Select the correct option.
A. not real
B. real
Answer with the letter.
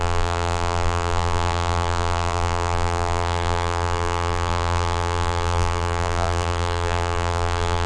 A